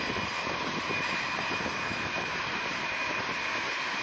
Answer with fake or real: real